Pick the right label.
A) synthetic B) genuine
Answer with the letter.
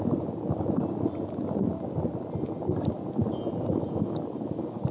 B